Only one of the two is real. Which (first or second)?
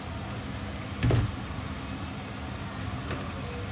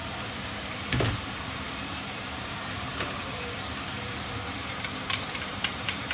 first